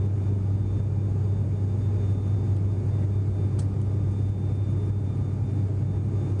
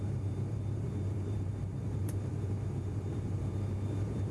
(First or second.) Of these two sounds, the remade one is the second